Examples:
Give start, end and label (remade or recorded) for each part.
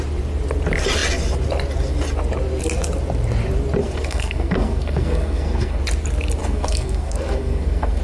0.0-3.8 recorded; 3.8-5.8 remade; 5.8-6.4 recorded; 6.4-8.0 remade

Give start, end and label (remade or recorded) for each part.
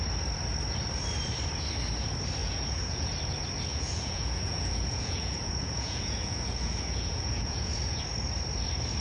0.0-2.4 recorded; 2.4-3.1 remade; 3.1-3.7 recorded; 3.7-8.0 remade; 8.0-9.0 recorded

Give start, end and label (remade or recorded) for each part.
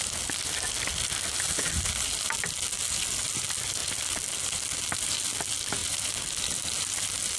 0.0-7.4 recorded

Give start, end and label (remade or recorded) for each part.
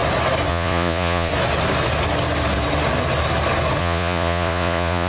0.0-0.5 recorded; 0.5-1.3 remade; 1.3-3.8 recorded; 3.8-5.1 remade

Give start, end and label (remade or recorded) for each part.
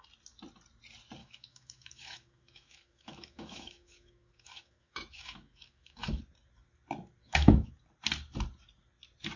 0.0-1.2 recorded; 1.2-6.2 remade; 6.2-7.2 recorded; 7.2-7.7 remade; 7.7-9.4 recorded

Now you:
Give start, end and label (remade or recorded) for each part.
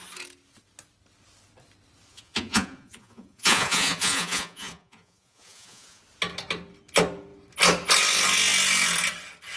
0.0-2.1 recorded; 2.1-6.0 remade; 6.0-9.6 recorded